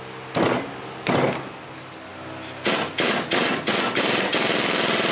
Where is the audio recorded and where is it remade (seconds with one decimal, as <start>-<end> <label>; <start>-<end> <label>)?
0.0-5.1 recorded